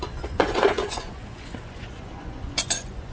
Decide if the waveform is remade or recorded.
remade